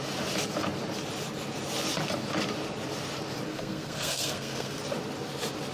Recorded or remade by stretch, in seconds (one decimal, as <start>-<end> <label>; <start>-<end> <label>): 0.0-3.5 recorded; 3.5-4.8 remade; 4.8-5.7 recorded